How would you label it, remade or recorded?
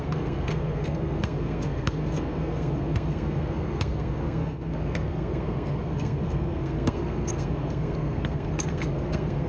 remade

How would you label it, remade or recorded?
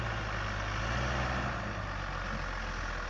recorded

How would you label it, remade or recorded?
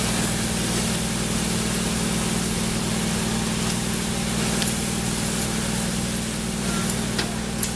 recorded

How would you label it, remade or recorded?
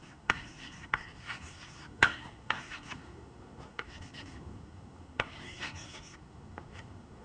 remade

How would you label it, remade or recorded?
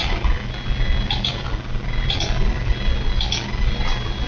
recorded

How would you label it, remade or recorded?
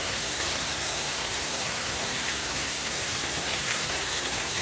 remade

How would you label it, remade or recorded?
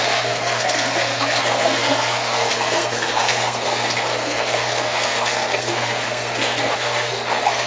remade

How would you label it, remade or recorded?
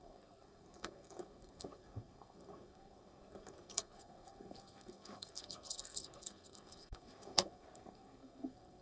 remade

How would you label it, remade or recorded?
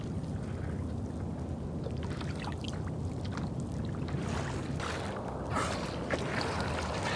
recorded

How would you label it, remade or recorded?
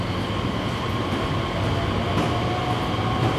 recorded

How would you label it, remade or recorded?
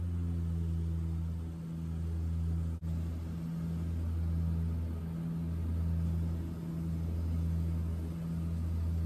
recorded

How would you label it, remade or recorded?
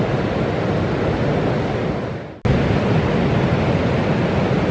recorded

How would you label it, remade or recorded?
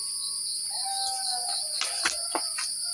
recorded